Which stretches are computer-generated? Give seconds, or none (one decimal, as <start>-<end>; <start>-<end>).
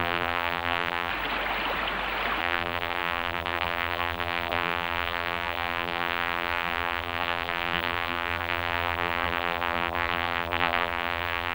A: 0.0-1.1; 2.4-11.5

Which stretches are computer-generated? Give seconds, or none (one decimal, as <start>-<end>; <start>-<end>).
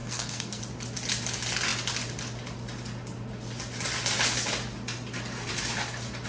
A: 0.0-0.6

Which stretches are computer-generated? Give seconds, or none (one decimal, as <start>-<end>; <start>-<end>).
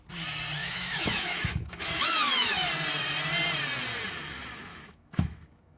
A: 0.6-2.7; 4.7-5.8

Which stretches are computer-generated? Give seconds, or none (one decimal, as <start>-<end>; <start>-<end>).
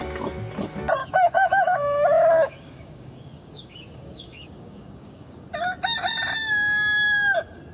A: 1.0-5.4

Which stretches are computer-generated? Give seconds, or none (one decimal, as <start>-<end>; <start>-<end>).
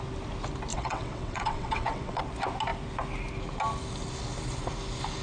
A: 0.7-2.2